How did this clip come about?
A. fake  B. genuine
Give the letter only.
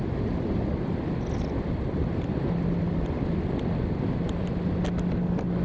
B